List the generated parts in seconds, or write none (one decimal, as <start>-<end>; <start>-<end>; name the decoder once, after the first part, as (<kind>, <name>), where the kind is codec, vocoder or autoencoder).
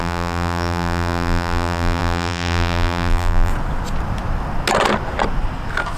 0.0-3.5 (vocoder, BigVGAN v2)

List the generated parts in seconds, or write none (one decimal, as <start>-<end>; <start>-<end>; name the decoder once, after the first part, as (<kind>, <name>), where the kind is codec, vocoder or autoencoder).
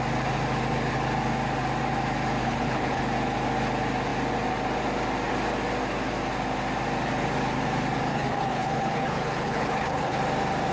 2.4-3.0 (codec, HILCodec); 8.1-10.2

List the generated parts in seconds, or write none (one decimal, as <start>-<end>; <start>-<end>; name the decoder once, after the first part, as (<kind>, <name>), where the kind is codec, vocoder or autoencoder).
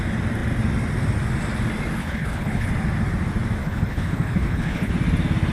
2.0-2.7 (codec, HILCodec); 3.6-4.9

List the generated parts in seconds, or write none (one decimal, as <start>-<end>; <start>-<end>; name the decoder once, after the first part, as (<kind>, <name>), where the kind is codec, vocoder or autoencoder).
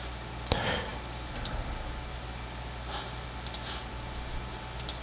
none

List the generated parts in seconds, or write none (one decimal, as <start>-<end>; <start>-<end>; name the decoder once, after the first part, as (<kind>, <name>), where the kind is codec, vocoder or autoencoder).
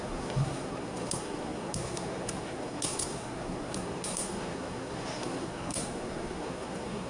0.0-7.1 (codec, SNAC)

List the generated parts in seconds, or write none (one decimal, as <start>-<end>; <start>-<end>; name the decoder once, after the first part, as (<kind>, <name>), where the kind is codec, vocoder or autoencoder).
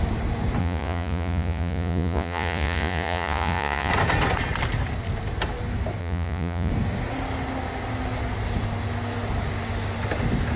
0.6-3.9 (vocoder, Vocos); 6.0-6.7